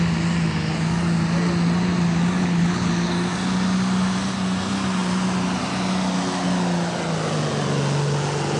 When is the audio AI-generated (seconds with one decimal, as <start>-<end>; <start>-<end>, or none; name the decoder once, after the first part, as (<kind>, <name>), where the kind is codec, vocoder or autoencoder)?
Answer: 2.4-2.9 (codec, HILCodec)